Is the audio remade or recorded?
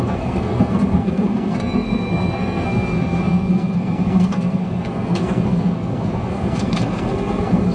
remade